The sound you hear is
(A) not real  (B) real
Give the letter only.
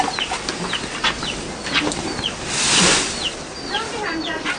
B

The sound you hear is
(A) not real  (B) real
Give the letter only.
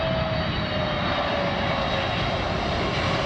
B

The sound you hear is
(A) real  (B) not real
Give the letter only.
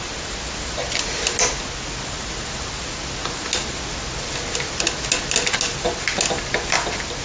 A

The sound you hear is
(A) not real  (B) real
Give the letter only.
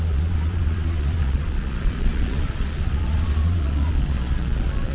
A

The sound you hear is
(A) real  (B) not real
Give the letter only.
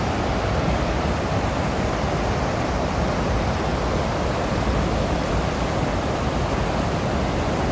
A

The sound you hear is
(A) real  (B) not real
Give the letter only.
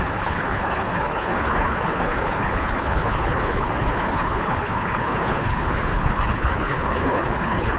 B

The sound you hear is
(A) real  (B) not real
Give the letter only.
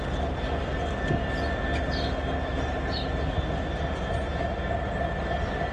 A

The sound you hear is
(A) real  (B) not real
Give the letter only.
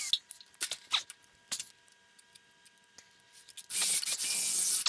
A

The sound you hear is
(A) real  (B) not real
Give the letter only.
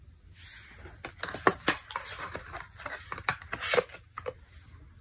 A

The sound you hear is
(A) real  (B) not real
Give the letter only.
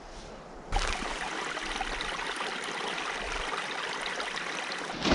A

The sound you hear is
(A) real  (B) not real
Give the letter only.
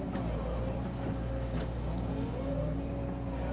A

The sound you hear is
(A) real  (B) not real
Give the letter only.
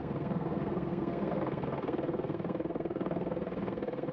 B